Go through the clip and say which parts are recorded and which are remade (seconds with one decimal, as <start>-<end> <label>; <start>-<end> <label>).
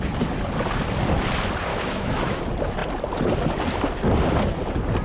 0.0-1.7 recorded; 1.7-2.4 remade; 2.4-5.0 recorded